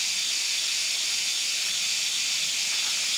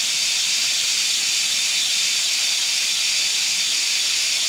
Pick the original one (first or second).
first